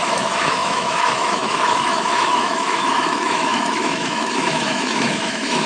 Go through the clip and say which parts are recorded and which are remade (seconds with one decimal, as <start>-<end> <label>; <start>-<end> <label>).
0.0-5.7 remade